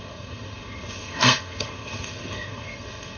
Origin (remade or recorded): remade